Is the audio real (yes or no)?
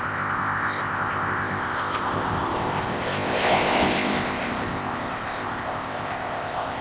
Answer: no